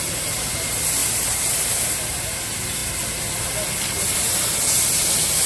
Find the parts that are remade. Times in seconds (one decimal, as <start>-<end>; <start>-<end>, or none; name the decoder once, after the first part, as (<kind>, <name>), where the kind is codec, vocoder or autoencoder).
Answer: none